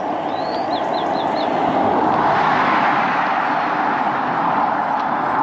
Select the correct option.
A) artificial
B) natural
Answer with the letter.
B